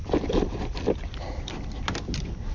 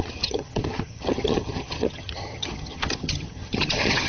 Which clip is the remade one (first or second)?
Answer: second